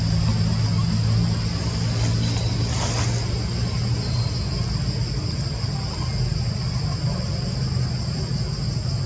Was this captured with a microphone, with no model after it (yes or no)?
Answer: yes